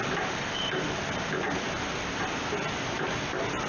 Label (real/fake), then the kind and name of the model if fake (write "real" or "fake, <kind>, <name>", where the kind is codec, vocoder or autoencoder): real